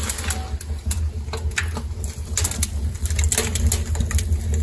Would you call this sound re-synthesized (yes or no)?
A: no